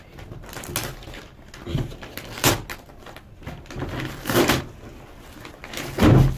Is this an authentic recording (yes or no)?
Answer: yes